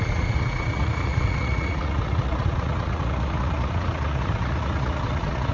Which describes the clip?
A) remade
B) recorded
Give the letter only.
A